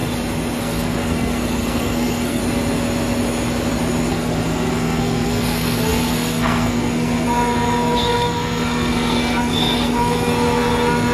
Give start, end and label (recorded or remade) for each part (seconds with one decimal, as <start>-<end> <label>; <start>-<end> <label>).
0.0-0.6 recorded; 0.6-2.4 remade; 2.4-4.1 recorded; 4.1-11.1 remade